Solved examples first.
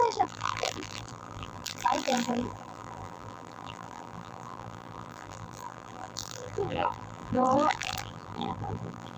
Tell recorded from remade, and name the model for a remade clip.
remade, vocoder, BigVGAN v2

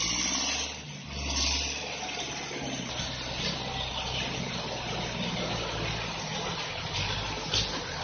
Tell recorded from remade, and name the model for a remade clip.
recorded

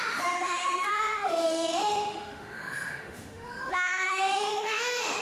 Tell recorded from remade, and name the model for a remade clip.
remade, autoencoder, DAC-VAE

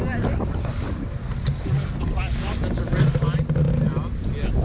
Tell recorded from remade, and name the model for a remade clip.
recorded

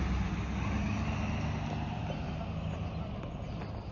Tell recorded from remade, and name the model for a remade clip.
recorded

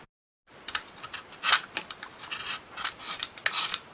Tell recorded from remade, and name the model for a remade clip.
recorded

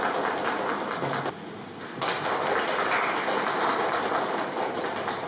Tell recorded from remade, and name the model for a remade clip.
recorded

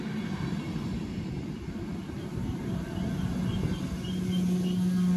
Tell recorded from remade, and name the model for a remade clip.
recorded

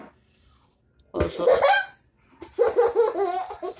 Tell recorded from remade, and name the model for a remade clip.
recorded